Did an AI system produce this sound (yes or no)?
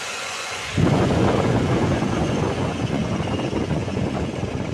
yes